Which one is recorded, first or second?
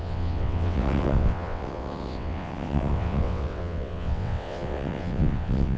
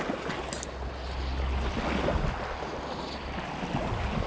second